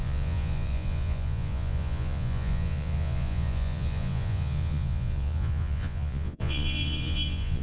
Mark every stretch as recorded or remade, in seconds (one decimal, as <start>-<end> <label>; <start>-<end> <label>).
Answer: 0.0-7.6 remade